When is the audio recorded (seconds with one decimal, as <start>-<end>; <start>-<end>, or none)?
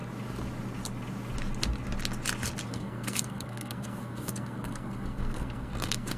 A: 0.0-2.7